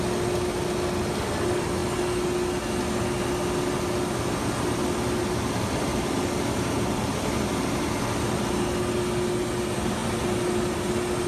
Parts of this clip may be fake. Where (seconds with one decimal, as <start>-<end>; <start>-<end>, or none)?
none